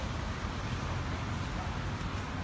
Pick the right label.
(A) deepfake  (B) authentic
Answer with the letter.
B